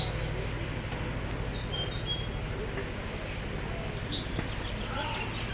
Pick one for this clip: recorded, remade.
recorded